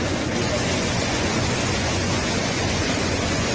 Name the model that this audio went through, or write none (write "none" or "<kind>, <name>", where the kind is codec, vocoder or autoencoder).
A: vocoder, Vocos